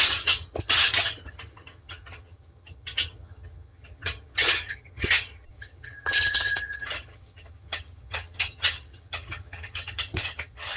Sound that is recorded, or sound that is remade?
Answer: remade